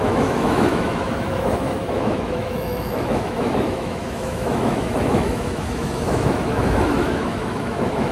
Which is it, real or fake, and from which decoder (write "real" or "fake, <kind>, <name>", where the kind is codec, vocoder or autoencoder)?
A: fake, autoencoder, DAC-VAE